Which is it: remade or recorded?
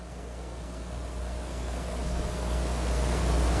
remade